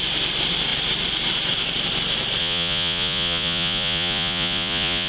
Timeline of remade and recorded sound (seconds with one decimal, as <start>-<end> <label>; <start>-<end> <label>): 0.0-2.4 recorded; 2.4-5.1 remade

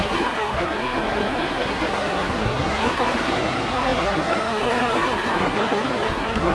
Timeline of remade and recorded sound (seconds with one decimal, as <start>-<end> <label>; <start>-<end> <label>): 0.0-6.5 remade

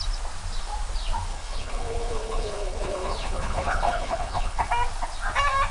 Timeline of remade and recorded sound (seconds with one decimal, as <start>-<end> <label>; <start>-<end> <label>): 0.0-1.3 recorded; 1.3-4.7 remade; 4.7-5.7 recorded

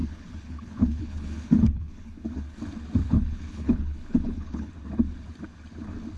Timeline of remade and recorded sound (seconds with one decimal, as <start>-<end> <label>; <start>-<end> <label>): 0.0-2.6 remade; 2.6-3.0 recorded; 3.0-4.7 remade; 4.7-6.2 recorded

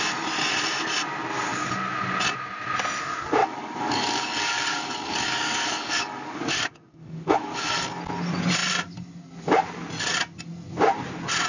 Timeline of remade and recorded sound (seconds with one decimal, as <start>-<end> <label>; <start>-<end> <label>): 0.0-3.4 recorded; 3.4-7.8 remade; 7.8-11.5 recorded

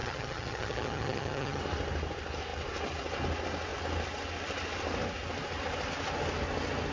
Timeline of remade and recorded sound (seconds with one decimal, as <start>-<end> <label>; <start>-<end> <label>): 0.0-1.6 remade; 1.6-6.9 recorded

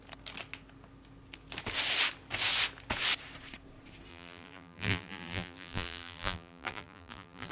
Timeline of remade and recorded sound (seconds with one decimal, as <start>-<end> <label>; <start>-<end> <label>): 0.0-4.1 recorded; 4.1-7.5 remade

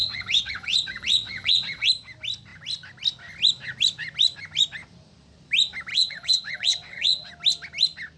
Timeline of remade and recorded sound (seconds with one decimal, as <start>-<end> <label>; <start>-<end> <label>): 0.0-1.9 remade; 1.9-5.9 recorded; 5.9-7.3 remade; 7.3-8.2 recorded